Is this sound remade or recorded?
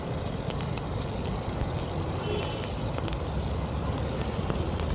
recorded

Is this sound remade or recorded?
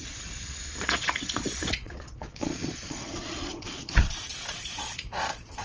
remade